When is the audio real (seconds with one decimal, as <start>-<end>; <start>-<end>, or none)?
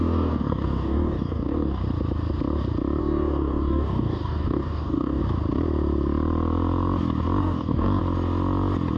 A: 1.8-3.0; 5.2-7.4; 8.0-9.0